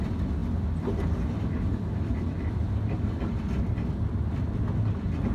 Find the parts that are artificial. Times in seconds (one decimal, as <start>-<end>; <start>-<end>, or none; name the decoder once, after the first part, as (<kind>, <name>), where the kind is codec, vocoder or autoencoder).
none